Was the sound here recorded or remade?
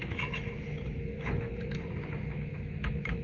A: remade